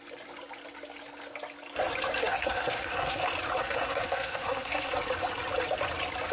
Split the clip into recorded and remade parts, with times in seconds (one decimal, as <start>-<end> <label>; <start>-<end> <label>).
0.0-2.2 recorded; 2.2-3.2 remade; 3.2-3.6 recorded; 3.6-4.9 remade; 4.9-6.3 recorded